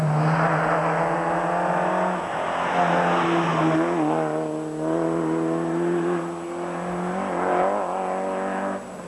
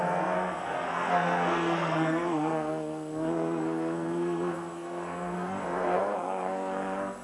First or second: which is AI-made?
second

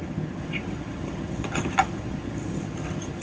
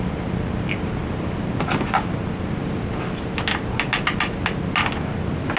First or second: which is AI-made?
first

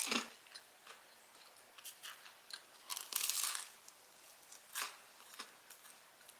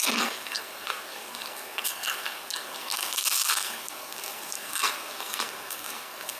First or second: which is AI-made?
second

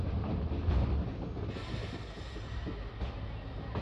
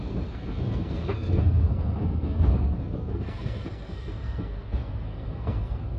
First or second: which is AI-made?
second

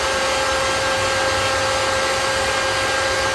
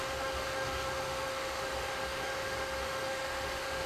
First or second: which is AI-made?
second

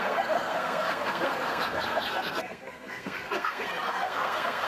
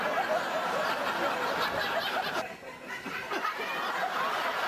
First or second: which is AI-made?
first